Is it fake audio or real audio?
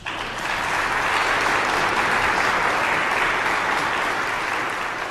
real